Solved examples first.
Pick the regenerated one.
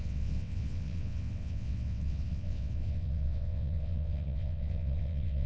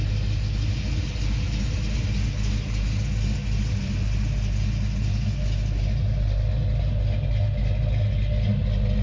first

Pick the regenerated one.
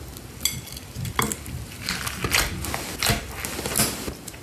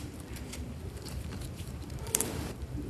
second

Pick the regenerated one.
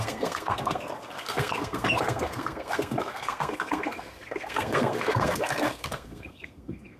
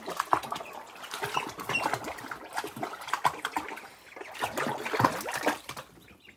first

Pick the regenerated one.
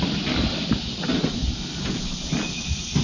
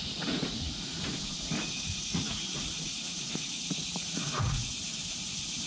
second